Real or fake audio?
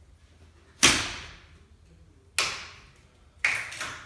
real